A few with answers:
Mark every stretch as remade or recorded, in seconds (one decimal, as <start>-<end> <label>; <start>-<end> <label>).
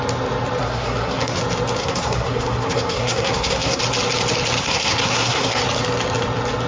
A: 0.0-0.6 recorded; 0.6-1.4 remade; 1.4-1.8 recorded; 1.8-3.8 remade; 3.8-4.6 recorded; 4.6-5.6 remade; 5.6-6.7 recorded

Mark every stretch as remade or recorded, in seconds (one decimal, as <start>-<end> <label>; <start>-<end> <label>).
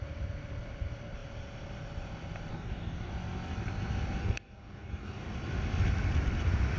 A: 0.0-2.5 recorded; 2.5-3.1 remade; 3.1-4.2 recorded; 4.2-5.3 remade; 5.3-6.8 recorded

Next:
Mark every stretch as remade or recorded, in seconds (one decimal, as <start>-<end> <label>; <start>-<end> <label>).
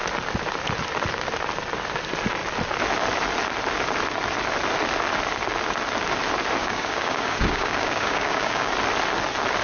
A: 0.0-6.6 recorded; 6.6-8.7 remade; 8.7-9.6 recorded